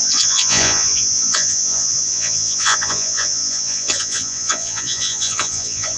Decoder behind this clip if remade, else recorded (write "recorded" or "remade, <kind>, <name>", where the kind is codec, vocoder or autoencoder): remade, vocoder, Vocos